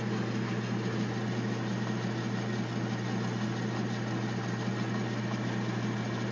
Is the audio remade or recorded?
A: recorded